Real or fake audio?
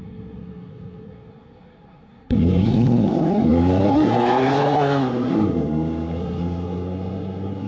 fake